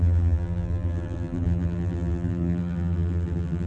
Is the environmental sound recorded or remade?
remade